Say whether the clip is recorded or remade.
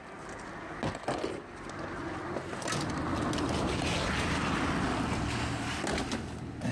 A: recorded